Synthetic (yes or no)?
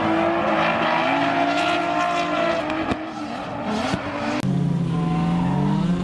no